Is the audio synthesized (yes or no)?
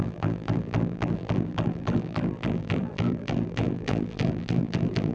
yes